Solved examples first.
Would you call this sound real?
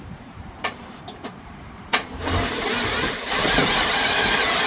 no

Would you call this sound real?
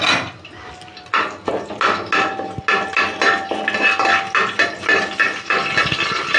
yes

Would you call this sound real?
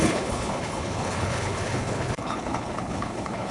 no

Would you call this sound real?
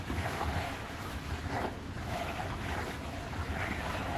no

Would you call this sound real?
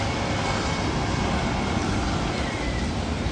yes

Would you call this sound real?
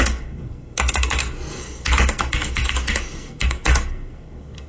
no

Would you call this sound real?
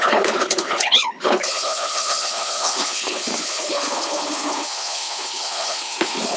no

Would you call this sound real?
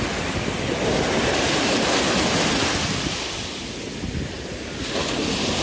yes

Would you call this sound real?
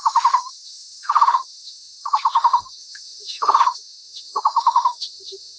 no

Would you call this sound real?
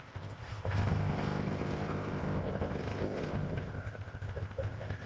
no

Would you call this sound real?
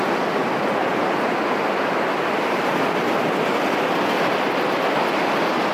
yes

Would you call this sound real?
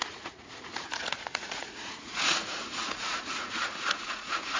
no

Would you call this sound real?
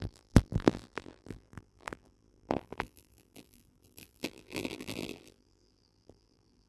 no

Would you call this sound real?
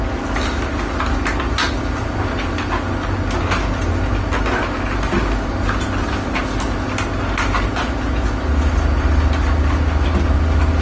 yes